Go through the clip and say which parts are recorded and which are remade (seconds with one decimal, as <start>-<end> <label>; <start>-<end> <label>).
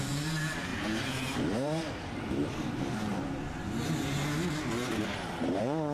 0.0-3.1 remade; 3.1-4.9 recorded; 4.9-5.9 remade